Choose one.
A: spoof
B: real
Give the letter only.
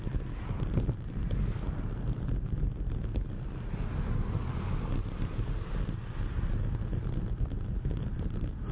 B